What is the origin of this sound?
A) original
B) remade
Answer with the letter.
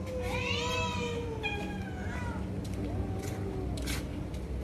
A